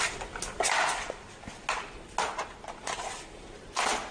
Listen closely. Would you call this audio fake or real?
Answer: real